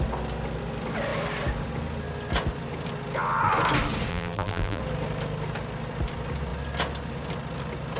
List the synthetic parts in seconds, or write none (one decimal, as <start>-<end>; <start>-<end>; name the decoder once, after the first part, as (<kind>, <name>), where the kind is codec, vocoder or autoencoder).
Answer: 4.1-4.8 (vocoder, BigVGAN v2)

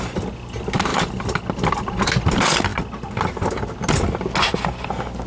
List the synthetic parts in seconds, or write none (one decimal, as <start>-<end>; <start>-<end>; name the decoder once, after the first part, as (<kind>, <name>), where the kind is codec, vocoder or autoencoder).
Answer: none

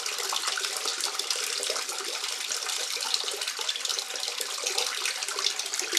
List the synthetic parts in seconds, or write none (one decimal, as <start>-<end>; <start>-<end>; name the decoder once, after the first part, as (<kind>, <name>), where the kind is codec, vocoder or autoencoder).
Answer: 0.0-3.9 (vocoder, BigVGAN v2); 5.1-6.0

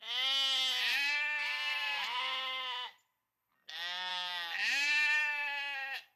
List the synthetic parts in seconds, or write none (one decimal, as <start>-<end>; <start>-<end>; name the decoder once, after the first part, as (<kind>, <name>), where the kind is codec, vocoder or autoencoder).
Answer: none

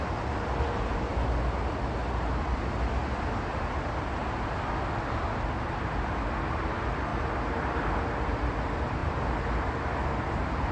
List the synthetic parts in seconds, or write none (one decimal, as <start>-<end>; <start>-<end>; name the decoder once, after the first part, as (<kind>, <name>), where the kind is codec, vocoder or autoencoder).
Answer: none

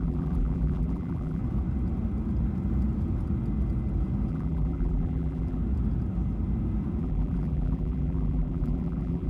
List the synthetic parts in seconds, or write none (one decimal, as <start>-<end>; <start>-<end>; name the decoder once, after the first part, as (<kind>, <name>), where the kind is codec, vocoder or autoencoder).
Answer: 0.0-1.4 (vocoder, BigVGAN v2); 4.3-5.6; 7.0-9.3

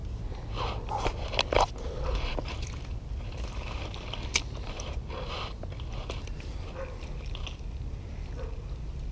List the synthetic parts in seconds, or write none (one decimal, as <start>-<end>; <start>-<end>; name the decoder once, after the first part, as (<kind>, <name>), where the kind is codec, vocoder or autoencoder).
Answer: none

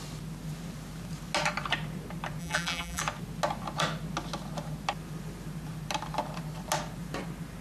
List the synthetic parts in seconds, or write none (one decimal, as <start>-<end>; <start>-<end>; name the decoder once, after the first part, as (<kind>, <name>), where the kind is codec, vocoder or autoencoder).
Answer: 2.4-3.0 (vocoder, BigVGAN v2)